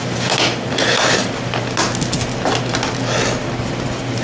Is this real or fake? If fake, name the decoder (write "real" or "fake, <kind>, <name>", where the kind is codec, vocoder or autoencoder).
real